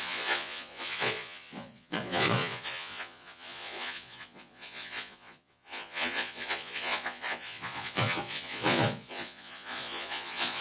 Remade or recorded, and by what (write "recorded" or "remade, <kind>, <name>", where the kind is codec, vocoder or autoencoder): remade, vocoder, Vocos